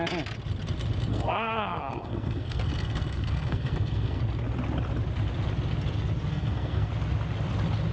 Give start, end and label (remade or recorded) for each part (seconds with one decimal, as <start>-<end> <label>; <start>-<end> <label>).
0.0-1.1 recorded; 1.1-4.2 remade; 4.2-6.3 recorded; 6.3-6.9 remade; 6.9-7.9 recorded